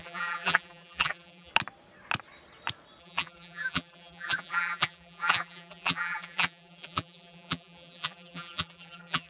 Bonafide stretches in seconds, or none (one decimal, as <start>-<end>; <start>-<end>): 1.5-3.0